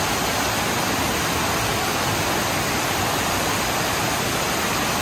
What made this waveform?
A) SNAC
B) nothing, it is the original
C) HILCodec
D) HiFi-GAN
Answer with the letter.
B